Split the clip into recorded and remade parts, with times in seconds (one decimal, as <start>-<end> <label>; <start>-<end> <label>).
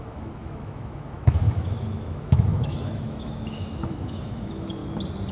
0.0-4.8 remade; 4.8-5.3 recorded